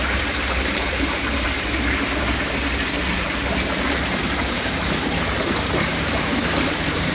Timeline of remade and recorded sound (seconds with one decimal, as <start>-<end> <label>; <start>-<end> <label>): 0.0-1.7 remade; 1.7-3.1 recorded; 3.1-7.1 remade